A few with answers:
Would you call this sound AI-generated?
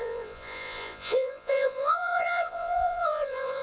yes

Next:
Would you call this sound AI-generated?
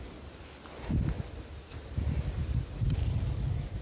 no